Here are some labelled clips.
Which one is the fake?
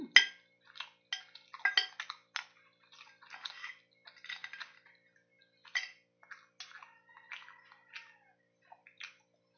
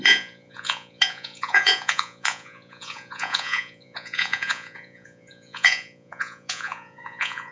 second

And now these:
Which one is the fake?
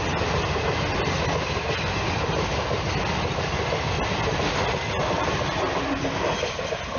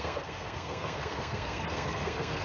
second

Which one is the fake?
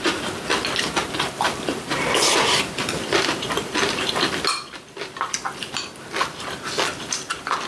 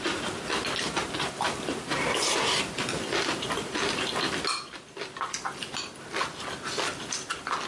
first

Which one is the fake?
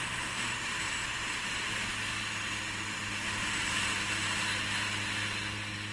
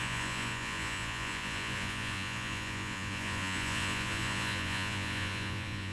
second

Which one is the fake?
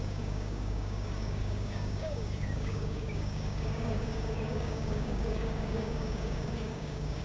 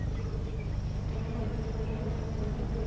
first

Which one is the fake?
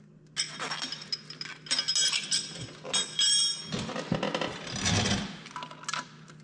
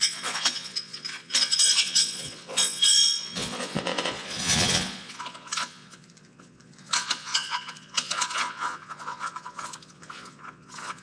second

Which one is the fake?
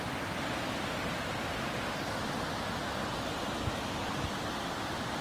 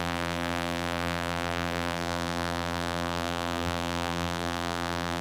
second